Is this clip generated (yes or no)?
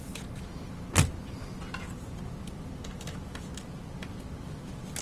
no